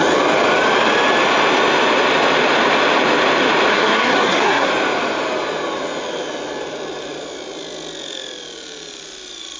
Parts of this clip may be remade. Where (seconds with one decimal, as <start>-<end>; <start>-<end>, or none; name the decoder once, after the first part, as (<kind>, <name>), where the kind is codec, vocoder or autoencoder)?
3.7-4.7 (codec, SNAC)